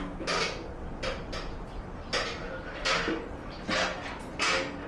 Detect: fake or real real